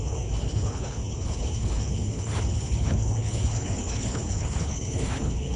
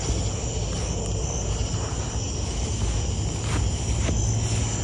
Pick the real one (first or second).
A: second